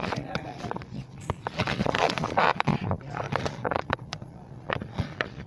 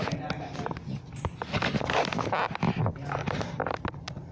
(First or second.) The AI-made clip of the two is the first